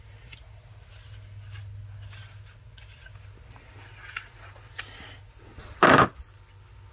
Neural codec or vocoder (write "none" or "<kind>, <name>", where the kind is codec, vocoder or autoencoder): none